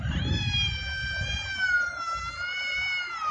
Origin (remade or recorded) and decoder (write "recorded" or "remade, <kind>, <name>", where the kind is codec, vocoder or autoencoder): recorded